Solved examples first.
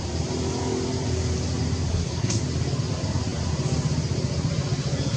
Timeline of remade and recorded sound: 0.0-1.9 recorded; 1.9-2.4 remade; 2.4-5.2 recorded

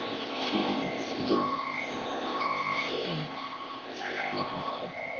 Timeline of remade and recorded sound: 0.0-5.2 remade

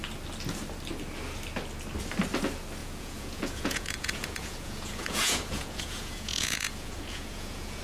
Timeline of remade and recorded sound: 0.0-2.8 recorded; 2.8-7.8 remade